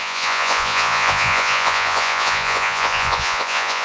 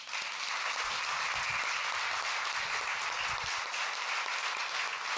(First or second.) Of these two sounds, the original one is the second